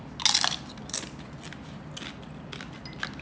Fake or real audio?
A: real